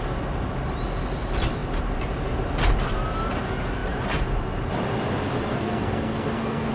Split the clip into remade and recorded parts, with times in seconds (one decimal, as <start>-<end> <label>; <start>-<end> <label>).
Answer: 0.0-5.5 recorded; 5.5-6.7 remade